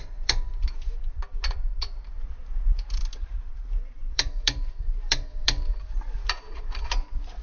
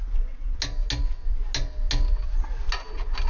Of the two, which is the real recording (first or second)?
second